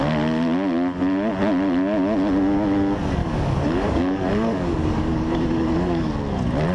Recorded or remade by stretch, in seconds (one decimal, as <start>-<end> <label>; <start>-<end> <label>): 0.0-3.2 recorded; 3.2-6.1 remade; 6.1-6.7 recorded